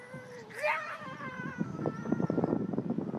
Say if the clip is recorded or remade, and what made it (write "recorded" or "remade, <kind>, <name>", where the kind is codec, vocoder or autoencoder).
recorded